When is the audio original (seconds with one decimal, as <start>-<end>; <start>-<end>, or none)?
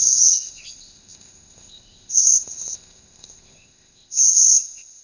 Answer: none